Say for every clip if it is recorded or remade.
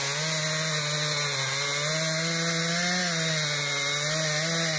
recorded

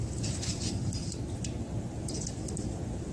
recorded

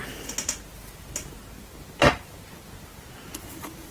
recorded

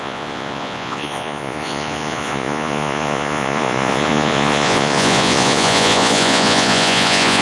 remade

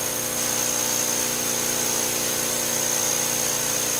recorded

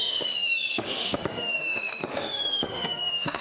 remade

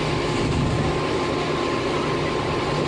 recorded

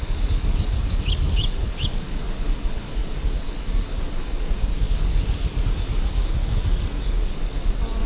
remade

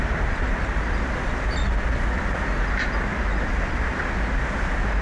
recorded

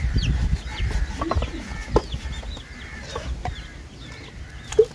recorded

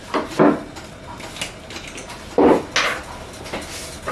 recorded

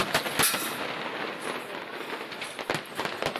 recorded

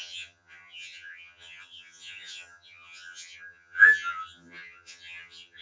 remade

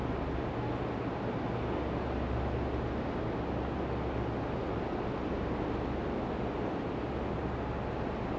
recorded